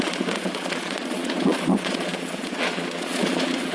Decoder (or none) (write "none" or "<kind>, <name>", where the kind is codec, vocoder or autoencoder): vocoder, Vocos